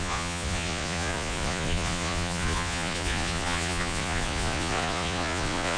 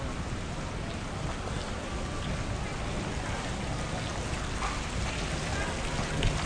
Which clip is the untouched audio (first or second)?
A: second